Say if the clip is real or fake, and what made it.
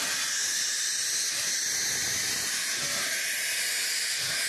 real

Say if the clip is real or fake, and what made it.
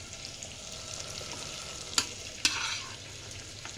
real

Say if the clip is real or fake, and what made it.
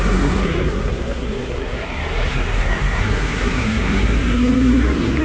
fake, codec, SNAC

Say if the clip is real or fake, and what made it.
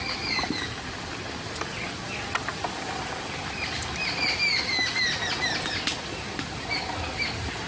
real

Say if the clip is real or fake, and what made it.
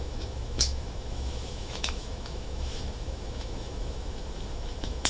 fake, autoencoder, DAC-VAE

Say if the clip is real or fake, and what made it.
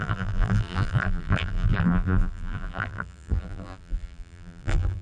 fake, vocoder, BigVGAN v2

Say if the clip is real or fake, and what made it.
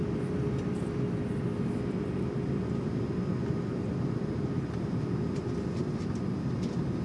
real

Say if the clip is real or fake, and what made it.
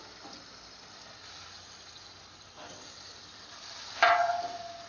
real